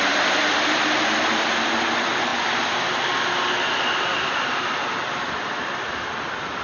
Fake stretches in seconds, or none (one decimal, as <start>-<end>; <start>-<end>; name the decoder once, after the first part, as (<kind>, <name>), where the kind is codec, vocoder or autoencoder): none